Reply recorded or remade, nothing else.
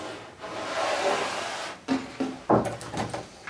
recorded